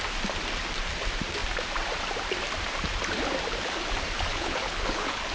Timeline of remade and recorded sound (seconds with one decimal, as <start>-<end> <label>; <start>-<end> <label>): 0.0-4.3 recorded; 4.3-5.3 remade